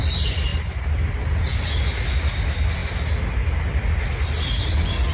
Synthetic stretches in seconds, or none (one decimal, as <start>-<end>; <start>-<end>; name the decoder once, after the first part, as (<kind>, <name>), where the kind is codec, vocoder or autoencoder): none